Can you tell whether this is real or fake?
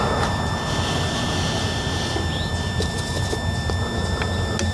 real